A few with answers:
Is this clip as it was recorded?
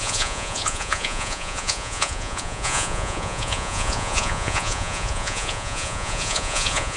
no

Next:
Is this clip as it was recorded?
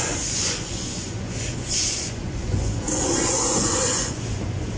no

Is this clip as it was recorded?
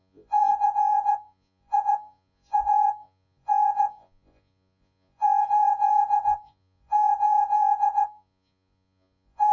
no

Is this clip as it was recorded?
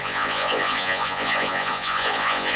no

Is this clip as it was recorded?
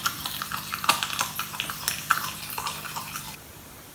yes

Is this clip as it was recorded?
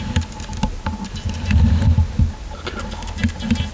yes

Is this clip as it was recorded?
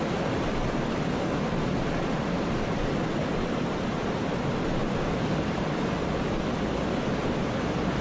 yes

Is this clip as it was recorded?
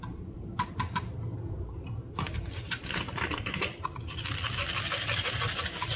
yes